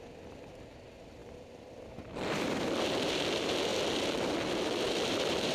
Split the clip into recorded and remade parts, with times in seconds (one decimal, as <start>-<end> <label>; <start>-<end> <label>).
0.0-3.7 remade; 3.7-5.1 recorded; 5.1-5.5 remade